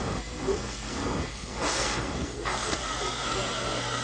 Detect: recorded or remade remade